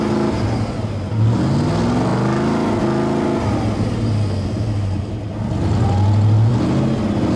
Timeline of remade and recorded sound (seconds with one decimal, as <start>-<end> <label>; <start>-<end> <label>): 0.0-7.4 recorded